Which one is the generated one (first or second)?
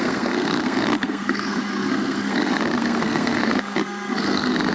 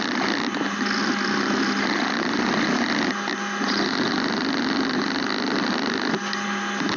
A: first